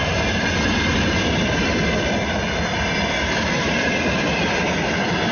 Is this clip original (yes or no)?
yes